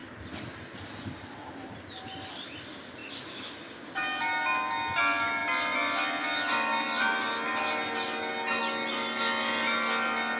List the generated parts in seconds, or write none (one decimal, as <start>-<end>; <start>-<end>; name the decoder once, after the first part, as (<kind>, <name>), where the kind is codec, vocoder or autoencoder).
none